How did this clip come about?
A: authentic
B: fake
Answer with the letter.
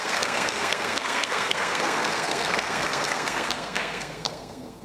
B